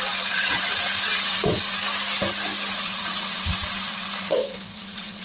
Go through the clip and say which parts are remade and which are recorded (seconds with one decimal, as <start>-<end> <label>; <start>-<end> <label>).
0.0-1.8 remade; 1.8-2.7 recorded; 2.7-5.2 remade